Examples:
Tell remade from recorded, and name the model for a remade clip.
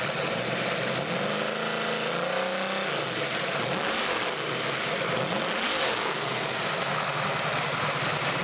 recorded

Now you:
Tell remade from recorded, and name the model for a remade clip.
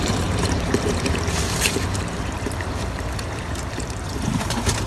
remade, vocoder, BigVGAN v2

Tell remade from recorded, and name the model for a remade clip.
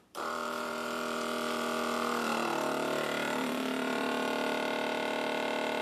remade, vocoder, BigVGAN v2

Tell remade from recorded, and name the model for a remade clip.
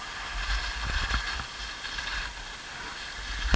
recorded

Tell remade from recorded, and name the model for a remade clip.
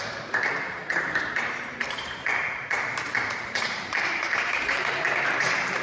remade, vocoder, BigVGAN v2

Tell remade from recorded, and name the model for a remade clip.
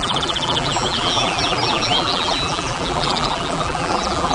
remade, vocoder, BigVGAN v2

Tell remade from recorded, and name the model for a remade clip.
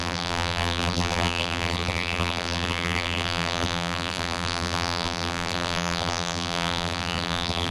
remade, vocoder, BigVGAN v2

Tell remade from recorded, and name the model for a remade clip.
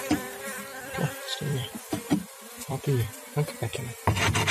remade, vocoder, BigVGAN v2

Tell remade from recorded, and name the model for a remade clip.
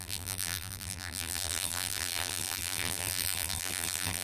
remade, vocoder, BigVGAN v2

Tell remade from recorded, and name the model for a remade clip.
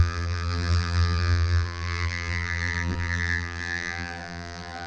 remade, vocoder, BigVGAN v2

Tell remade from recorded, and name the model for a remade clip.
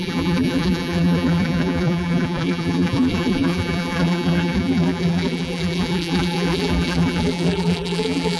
remade, vocoder, BigVGAN v2